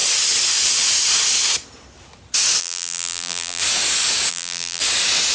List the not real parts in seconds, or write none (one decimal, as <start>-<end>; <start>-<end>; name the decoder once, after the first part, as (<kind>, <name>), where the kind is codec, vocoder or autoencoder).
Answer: 2.6-3.6 (vocoder, BigVGAN v2); 4.3-4.8